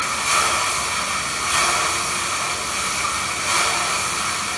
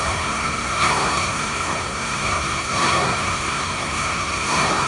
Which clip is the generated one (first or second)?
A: second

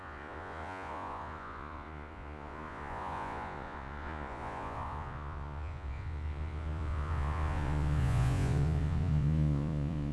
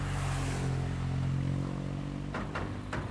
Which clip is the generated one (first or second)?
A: first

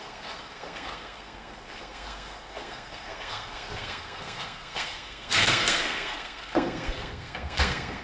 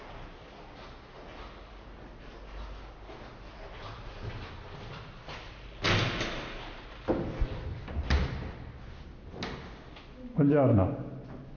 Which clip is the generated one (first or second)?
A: first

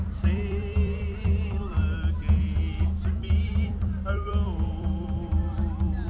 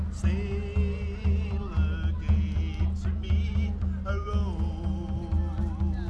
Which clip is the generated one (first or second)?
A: first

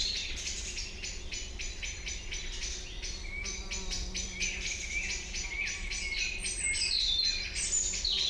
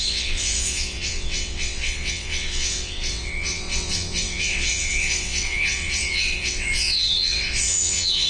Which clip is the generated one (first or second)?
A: second